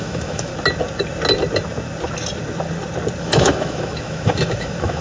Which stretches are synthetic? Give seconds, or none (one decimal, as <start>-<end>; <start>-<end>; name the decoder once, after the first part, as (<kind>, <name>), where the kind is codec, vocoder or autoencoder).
0.0-0.5 (autoencoder, DAC-VAE); 3.2-5.0